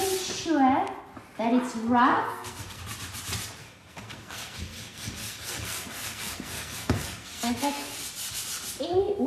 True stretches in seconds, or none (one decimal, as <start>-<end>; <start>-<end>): 0.0-2.1; 2.8-3.6; 7.9-9.3